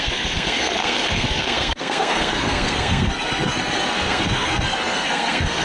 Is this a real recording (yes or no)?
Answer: no